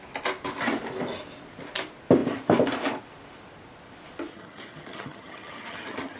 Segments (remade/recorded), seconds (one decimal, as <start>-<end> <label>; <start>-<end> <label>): 0.0-4.3 recorded; 4.3-6.2 remade